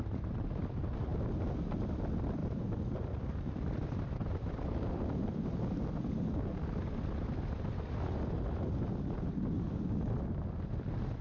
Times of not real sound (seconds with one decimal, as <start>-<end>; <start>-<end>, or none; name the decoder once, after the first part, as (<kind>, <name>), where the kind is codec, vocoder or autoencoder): 2.4-5.6 (vocoder, BigVGAN v2)